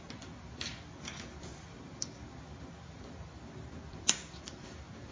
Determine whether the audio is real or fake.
real